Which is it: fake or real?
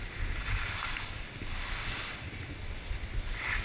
real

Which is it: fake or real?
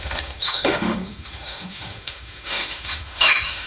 fake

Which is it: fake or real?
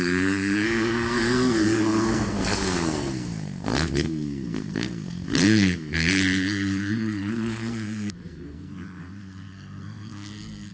fake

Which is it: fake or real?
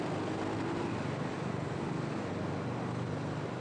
real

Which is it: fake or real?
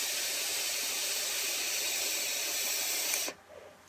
real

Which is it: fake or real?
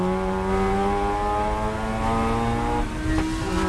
real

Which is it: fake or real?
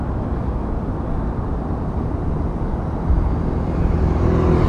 real